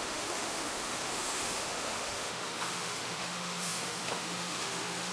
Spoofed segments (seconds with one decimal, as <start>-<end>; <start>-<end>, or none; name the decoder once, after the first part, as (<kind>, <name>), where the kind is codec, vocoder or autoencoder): 0.0-5.1 (autoencoder, DAC-VAE)